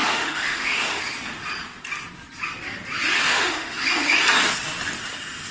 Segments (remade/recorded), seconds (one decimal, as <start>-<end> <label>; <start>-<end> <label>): 0.0-1.0 remade; 1.0-3.2 recorded; 3.2-3.8 remade; 3.8-5.5 recorded